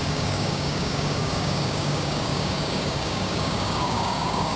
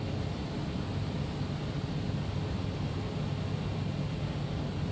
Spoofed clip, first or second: first